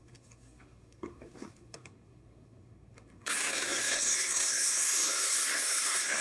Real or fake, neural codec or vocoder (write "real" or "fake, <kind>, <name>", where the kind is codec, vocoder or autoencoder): fake, codec, SNAC